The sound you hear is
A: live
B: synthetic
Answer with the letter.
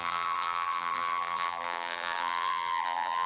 B